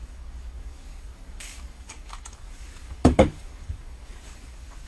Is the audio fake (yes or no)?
yes